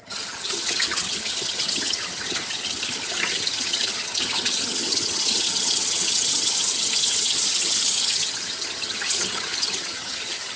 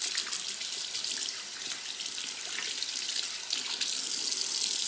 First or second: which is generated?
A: first